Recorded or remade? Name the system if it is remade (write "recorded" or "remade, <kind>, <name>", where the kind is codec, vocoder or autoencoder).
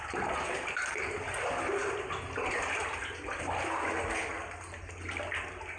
recorded